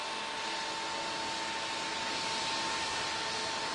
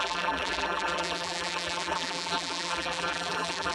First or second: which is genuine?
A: first